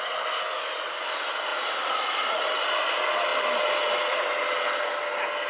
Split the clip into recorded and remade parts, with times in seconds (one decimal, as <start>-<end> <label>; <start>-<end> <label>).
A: 0.0-5.5 recorded